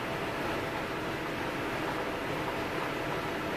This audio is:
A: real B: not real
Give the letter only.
A